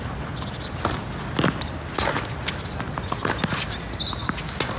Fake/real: real